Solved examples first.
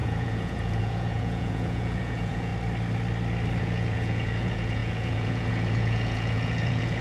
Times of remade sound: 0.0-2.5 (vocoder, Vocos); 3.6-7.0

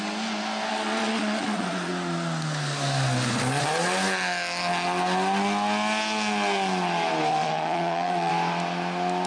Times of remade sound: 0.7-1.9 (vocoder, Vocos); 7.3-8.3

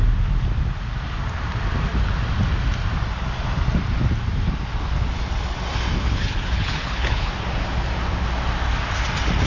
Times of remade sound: 6.0-7.3 (codec, HILCodec)

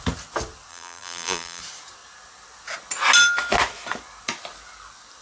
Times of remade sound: 0.7-1.6 (vocoder, BigVGAN v2)

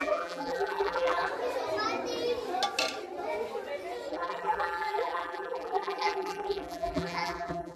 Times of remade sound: 0.0-1.3 (vocoder, BigVGAN v2); 4.1-7.8

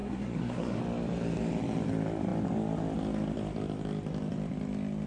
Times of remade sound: 0.0-0.8 (codec, SNAC)

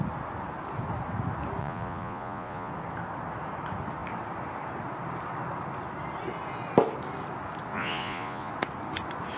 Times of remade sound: 1.6-2.7 (vocoder, Vocos); 7.7-8.5

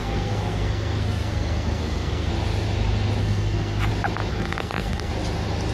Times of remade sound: 0.0-2.3 (codec, SNAC); 3.2-3.9; 4.3-5.1